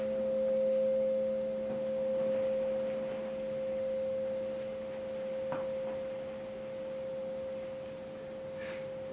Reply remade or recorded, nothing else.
recorded